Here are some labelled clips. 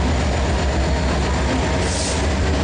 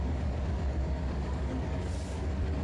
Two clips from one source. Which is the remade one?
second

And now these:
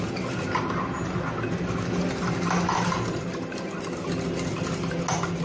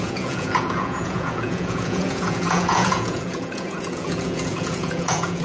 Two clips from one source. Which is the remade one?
second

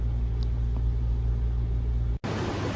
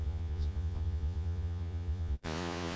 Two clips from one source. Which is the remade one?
second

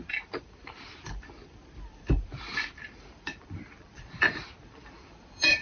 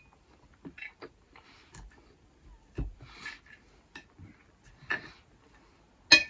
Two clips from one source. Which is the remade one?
first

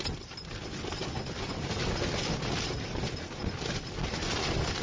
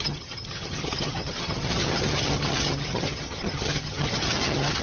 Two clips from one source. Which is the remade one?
second